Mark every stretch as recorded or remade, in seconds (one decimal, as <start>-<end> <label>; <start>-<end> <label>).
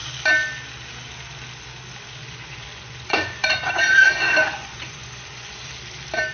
0.0-2.2 recorded; 2.2-5.7 remade; 5.7-6.3 recorded